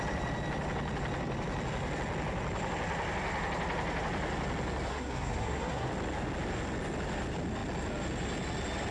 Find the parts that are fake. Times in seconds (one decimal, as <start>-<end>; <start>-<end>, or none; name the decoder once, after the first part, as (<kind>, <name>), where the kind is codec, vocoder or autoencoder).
4.9-5.9 (codec, SNAC)